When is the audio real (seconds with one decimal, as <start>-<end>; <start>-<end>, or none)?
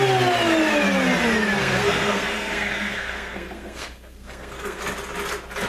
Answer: 0.0-1.6; 4.8-5.7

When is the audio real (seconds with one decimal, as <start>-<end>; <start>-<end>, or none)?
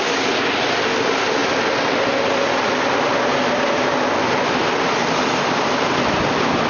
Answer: 0.0-6.7